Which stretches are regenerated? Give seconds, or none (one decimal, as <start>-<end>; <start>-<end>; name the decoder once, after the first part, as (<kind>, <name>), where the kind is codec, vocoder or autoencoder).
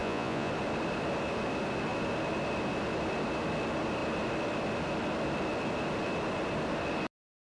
0.0-0.5 (vocoder, Vocos)